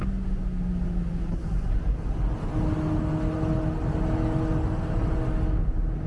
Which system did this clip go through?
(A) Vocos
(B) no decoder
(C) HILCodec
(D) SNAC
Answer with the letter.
B